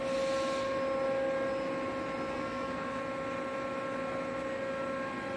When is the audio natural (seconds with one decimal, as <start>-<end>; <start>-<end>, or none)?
0.0-2.3; 3.0-5.4